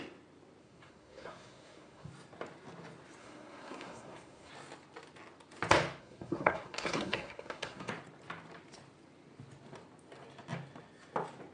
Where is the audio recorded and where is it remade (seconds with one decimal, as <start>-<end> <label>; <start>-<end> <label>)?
0.0-0.6 recorded; 0.6-2.1 remade; 2.1-3.2 recorded; 3.2-4.5 remade; 4.5-6.0 recorded; 6.0-7.9 remade; 7.9-11.5 recorded